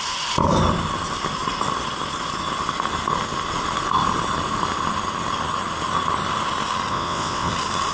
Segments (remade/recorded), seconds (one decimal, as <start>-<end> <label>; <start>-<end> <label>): 0.0-6.9 recorded; 6.9-7.5 remade; 7.5-7.9 recorded